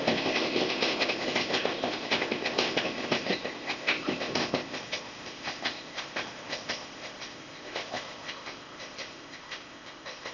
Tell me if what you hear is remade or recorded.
remade